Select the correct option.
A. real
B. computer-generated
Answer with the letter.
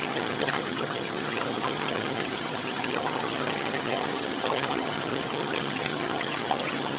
B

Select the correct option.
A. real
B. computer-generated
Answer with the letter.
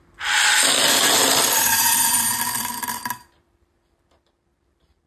A